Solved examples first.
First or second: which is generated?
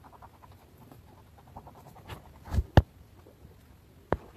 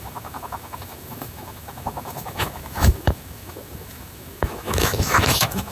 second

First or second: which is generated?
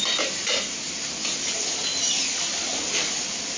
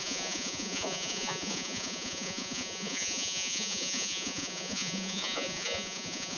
second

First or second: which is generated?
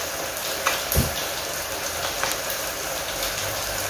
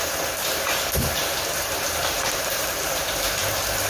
second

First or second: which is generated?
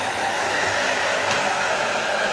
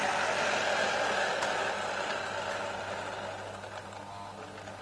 first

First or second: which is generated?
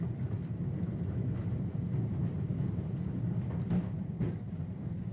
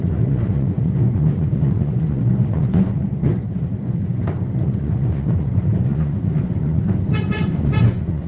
second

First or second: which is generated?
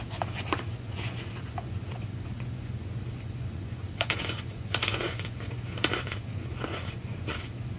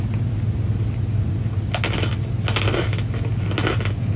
first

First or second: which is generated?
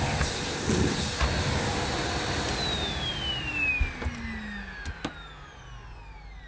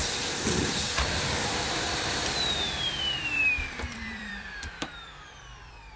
second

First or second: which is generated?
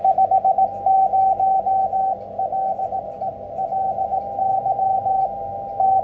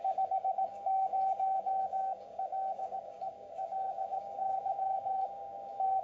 second